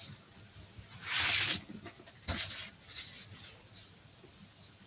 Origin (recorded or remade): recorded